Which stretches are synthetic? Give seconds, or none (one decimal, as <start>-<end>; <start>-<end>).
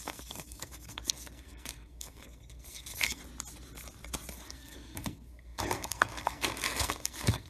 0.0-3.2; 4.3-7.5